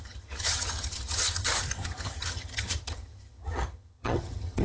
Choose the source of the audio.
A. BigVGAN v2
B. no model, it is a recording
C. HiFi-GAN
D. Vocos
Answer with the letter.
C